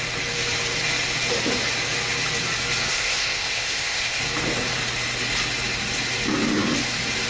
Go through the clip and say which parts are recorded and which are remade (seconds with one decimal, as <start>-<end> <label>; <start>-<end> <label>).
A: 0.0-2.9 recorded; 2.9-4.2 remade; 4.2-7.3 recorded

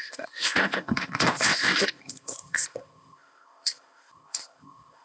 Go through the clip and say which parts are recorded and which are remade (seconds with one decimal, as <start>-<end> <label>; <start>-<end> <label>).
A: 0.0-5.0 remade

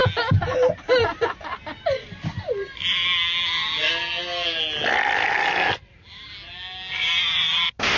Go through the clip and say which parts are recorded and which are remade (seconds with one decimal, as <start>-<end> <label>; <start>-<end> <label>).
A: 0.0-8.0 recorded

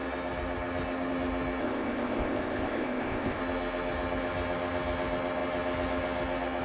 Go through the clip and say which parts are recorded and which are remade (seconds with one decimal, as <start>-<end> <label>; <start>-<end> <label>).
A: 0.0-1.6 recorded; 1.6-3.4 remade; 3.4-6.6 recorded

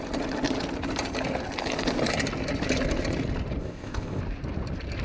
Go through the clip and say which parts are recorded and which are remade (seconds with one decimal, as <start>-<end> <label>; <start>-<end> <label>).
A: 0.0-3.6 recorded; 3.6-4.2 remade; 4.2-5.0 recorded

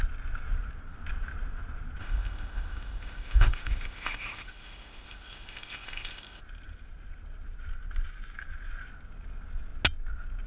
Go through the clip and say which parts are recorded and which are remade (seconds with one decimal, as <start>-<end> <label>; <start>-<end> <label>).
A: 0.0-2.0 recorded; 2.0-6.4 remade; 6.4-10.5 recorded